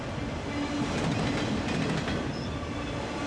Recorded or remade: recorded